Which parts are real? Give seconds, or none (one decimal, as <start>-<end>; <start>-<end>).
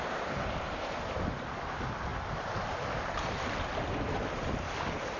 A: 3.7-4.2